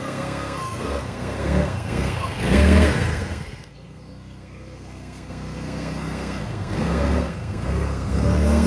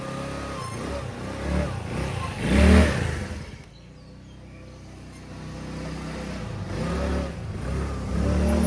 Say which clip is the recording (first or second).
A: second